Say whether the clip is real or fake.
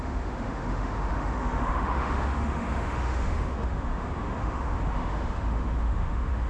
fake